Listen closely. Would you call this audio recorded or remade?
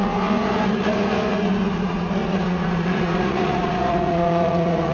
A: remade